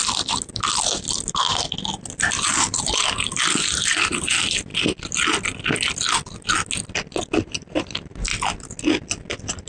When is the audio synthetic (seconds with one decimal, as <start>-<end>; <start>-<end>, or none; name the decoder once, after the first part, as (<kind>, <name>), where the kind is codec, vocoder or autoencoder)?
2.5-4.7 (vocoder, BigVGAN v2); 7.4-8.3